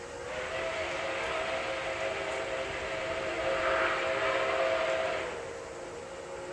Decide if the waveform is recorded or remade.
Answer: recorded